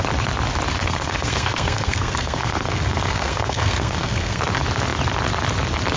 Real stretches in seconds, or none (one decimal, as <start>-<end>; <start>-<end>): 0.0-0.8; 4.4-6.0